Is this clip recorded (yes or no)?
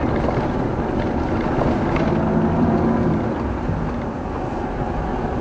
yes